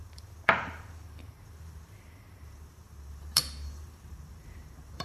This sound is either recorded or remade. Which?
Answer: remade